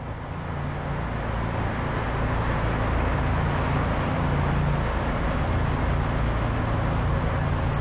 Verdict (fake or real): real